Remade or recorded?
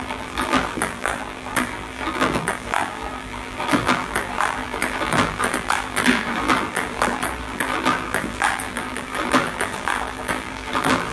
remade